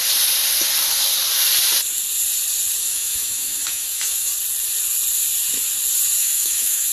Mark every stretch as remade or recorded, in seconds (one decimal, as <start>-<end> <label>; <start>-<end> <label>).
0.0-2.8 recorded; 2.8-4.3 remade; 4.3-6.2 recorded; 6.2-6.9 remade